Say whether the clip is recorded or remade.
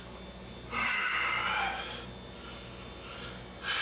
recorded